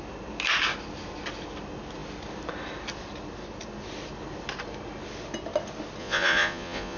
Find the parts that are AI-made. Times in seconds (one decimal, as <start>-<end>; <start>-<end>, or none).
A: 6.0-7.0